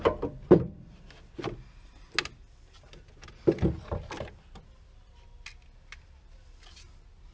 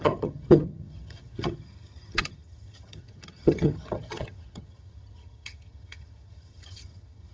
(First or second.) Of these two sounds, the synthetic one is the second